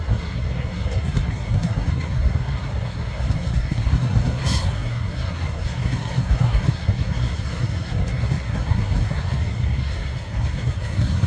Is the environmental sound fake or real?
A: fake